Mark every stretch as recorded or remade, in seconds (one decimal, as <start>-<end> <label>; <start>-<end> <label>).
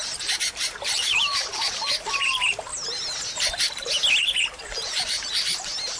0.0-2.7 remade; 2.7-4.2 recorded; 4.2-6.0 remade